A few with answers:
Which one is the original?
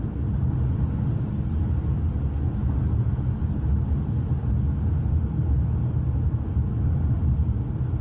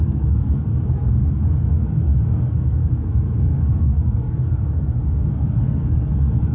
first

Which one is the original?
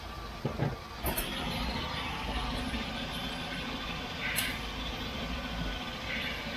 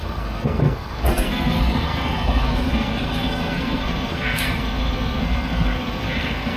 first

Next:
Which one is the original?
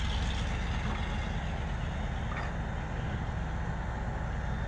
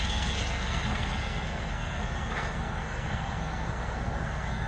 first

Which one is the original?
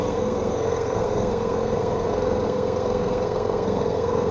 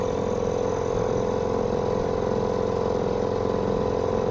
second